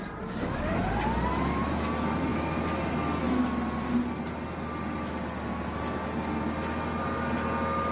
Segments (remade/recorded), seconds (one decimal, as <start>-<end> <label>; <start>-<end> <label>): 0.0-7.9 recorded